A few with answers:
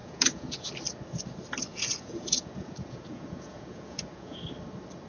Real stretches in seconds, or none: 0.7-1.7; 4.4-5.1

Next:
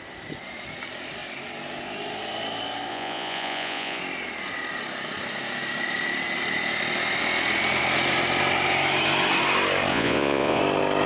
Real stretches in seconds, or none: 0.0-2.9; 4.0-9.9; 10.6-11.1

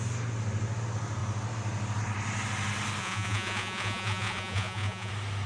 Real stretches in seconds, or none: 0.0-3.0; 5.1-5.5

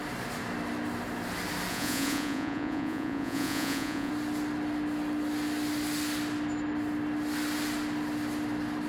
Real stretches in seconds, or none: 0.0-1.7; 4.1-8.9

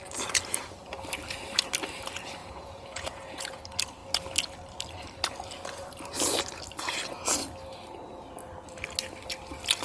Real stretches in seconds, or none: 0.0-2.4; 3.6-9.8

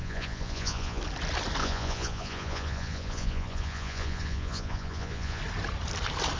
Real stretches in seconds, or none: 1.0-1.6; 5.4-6.4